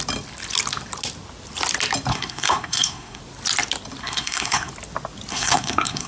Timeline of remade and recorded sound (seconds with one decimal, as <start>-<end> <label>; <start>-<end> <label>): 0.0-2.1 recorded; 2.1-3.2 remade; 3.2-4.0 recorded; 4.0-4.7 remade; 4.7-5.3 recorded; 5.3-6.1 remade